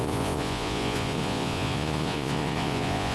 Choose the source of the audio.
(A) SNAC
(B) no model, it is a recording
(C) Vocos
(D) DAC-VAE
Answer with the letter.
C